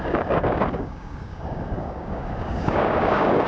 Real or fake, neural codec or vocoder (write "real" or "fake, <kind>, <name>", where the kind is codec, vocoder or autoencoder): fake, codec, DAC